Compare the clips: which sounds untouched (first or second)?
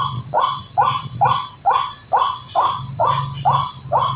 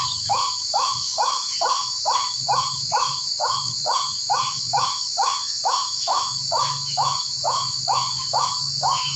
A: first